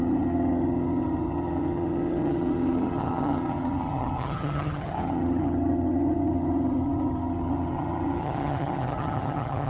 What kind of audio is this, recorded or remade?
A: remade